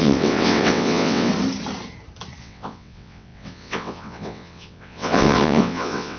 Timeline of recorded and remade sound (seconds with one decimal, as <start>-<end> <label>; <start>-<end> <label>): 0.0-1.3 remade; 1.3-2.4 recorded; 2.4-6.2 remade